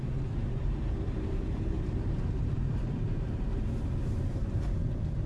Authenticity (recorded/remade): remade